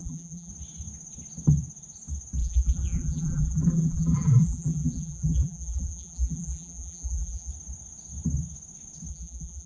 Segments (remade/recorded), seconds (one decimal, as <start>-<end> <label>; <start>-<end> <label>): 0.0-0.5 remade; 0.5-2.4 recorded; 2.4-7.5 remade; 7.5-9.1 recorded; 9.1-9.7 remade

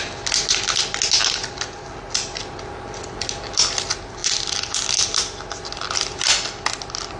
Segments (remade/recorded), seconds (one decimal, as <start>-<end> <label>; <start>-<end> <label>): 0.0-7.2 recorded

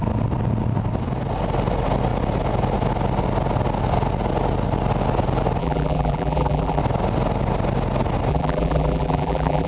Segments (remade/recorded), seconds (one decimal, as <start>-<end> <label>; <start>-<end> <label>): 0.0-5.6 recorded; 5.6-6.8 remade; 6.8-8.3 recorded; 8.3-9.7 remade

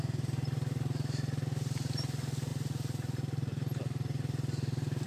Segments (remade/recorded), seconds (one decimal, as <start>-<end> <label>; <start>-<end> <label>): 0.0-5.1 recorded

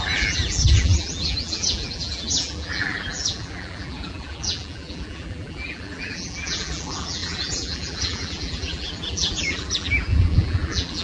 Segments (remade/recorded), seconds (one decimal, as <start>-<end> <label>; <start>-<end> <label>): 0.0-11.0 remade